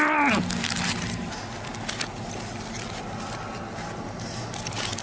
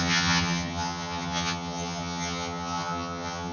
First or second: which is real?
first